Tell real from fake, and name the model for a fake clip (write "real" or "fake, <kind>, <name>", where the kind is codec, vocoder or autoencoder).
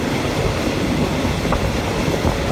real